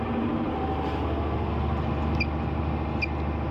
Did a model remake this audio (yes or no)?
no